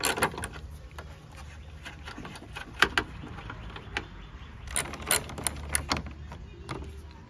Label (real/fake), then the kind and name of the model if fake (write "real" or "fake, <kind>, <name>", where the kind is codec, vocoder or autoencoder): real